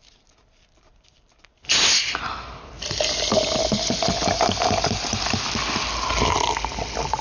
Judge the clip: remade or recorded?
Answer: recorded